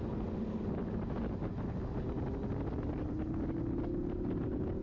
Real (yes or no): yes